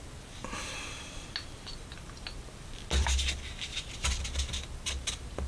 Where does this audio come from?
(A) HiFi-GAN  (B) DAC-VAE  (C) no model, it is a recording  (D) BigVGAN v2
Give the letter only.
C